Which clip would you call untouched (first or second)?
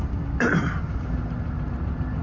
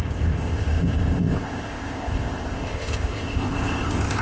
first